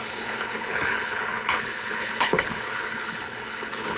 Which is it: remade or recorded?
remade